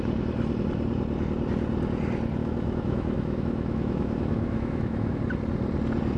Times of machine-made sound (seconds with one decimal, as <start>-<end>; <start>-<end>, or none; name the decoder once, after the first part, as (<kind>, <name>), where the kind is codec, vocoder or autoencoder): 2.4-5.2 (autoencoder, DAC-VAE)